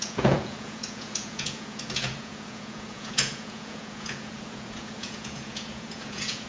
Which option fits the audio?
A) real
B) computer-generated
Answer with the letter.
B